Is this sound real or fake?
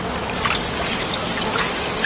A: real